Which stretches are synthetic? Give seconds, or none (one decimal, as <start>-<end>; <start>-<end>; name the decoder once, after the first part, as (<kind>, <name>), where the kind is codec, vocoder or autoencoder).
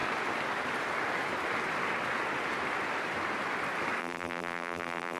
4.0-5.2 (vocoder, BigVGAN v2)